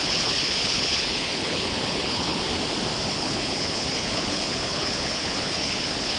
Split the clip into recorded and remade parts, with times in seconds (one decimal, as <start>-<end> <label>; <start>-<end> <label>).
0.0-2.5 remade; 2.5-3.1 recorded; 3.1-6.2 remade